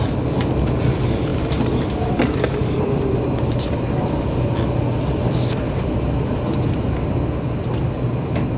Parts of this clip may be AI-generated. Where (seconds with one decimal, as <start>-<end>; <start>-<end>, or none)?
none